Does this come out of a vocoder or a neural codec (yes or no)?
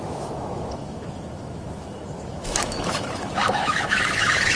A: yes